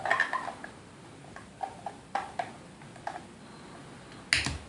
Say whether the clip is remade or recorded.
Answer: recorded